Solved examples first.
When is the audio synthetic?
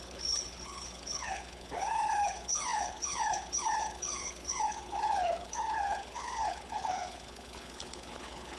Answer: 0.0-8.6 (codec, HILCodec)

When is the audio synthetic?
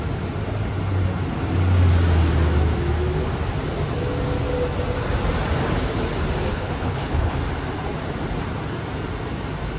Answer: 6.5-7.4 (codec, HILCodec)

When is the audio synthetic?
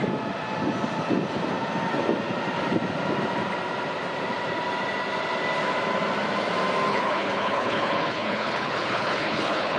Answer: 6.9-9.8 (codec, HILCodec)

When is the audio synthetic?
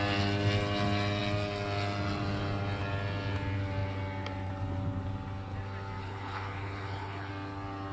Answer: 6.0-7.3 (codec, HILCodec)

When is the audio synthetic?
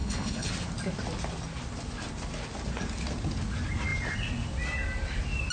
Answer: 0.0-0.5 (codec, HILCodec)